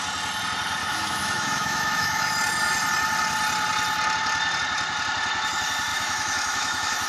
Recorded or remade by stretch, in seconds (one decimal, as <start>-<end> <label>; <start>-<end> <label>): 0.0-0.8 recorded; 0.8-2.3 remade; 2.3-5.9 recorded; 5.9-7.1 remade